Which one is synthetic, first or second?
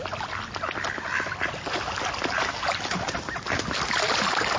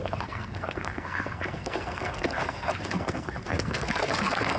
second